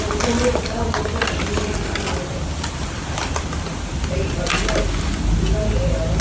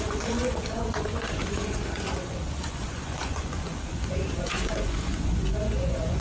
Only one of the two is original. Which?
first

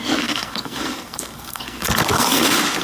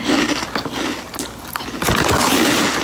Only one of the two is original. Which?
second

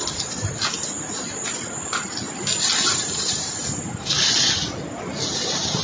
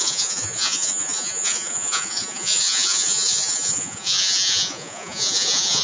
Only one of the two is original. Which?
first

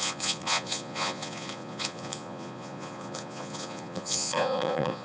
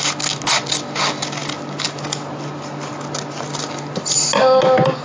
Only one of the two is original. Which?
second